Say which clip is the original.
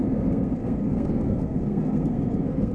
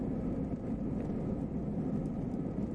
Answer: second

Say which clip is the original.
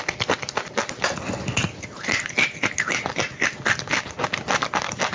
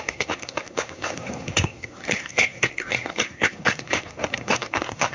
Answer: first